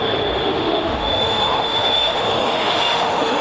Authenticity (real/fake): fake